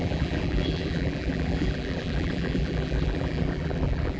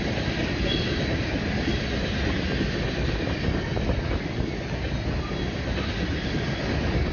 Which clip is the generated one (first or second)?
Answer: first